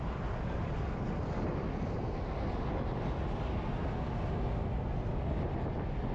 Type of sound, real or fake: real